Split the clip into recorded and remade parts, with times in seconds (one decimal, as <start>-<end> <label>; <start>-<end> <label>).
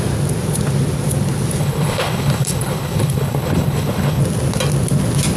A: 0.0-1.6 recorded; 1.6-4.2 remade; 4.2-5.4 recorded